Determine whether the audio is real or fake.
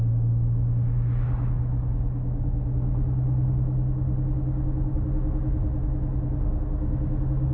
real